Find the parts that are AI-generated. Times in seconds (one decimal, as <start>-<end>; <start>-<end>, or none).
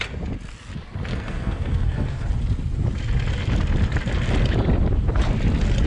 1.1-2.3